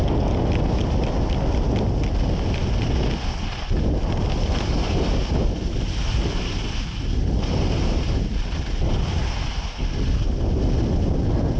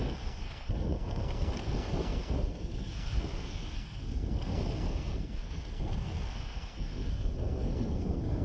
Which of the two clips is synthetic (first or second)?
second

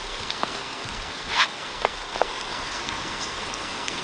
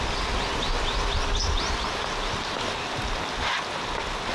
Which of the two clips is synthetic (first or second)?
first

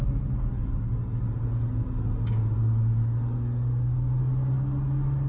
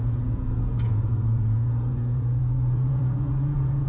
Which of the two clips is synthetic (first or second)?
second